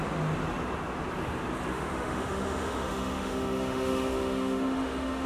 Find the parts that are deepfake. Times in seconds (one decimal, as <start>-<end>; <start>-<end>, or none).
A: 1.7-5.3